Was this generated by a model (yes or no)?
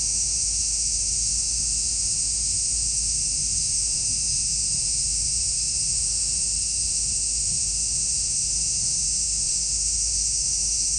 yes